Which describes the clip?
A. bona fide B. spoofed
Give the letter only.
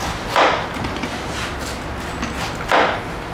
A